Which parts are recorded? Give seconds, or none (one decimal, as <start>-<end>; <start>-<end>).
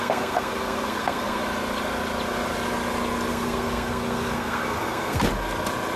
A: 1.4-3.3; 5.3-6.0